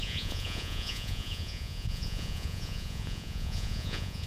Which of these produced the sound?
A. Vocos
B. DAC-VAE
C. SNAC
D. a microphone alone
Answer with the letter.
A